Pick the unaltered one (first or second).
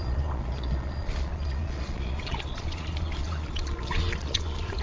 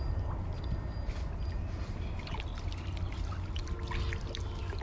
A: second